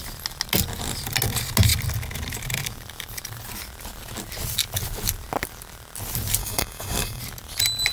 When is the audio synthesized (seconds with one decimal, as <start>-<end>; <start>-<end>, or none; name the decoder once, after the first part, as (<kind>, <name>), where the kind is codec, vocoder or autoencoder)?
6.4-7.2 (codec, DAC)